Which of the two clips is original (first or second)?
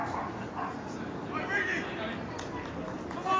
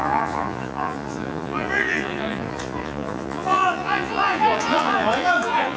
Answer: first